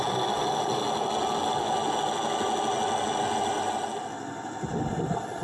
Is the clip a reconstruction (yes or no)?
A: no